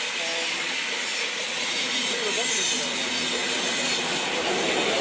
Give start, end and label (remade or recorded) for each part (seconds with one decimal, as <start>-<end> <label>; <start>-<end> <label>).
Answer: 0.0-1.1 recorded; 1.1-2.1 remade; 2.1-5.0 recorded